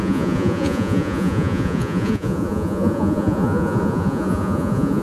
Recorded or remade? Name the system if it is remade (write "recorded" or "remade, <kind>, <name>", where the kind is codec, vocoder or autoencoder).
remade, vocoder, Vocos